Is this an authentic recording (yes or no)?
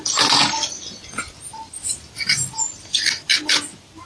yes